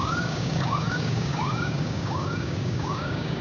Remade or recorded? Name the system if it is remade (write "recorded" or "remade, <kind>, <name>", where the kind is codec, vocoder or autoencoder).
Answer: remade, codec, DAC